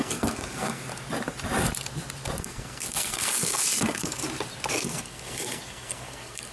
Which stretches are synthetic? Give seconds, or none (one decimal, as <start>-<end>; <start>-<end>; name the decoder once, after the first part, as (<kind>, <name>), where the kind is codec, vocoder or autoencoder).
0.0-0.9 (codec, SNAC); 2.4-4.2; 4.7-6.5